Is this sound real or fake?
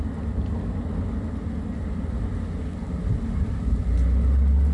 real